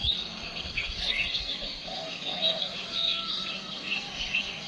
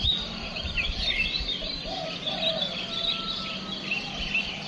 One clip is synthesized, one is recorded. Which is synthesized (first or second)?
first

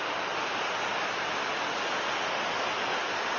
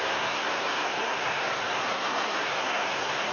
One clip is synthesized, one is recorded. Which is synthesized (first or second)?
second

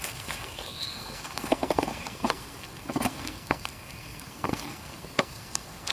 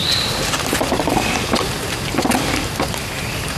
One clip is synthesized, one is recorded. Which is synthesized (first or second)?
first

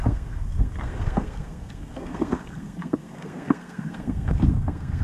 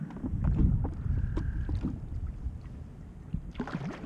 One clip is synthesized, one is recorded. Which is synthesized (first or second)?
first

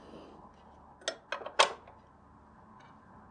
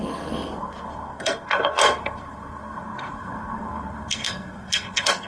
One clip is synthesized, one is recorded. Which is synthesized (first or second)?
second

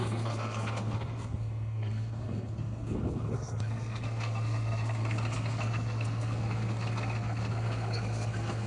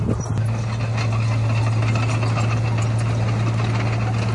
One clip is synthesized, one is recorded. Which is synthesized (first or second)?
first